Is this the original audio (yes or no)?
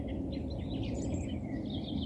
yes